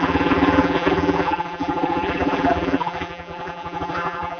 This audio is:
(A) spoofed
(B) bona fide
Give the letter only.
A